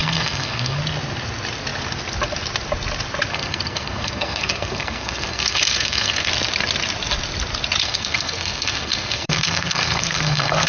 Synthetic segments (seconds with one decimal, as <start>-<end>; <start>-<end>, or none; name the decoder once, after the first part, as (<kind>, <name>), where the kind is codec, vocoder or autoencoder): 0.0-0.8 (codec, SNAC); 3.3-6.3; 7.8-10.7